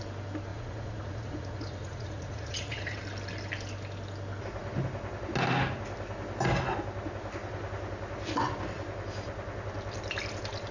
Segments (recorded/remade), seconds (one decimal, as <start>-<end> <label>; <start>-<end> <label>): 0.0-0.5 recorded; 0.5-3.0 remade; 3.0-10.7 recorded